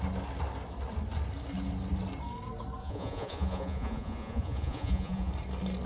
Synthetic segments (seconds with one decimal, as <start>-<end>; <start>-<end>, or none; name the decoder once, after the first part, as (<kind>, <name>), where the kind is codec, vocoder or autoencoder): 2.8-5.3 (vocoder, Vocos)